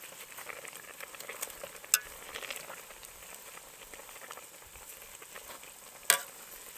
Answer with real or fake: real